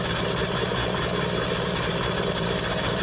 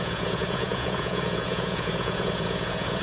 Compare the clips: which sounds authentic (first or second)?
first